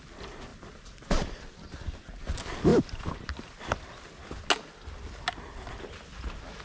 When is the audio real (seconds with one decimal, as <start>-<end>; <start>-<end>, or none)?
0.0-6.6